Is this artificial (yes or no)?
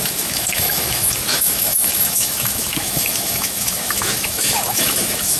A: yes